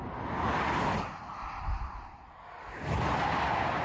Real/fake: real